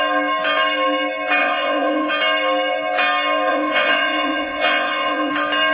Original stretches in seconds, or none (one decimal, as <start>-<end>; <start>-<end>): 0.0-1.4; 2.1-3.5; 5.3-5.7